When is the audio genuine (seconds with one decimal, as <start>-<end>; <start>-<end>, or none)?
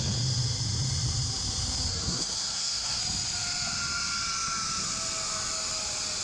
0.0-1.9; 3.0-6.2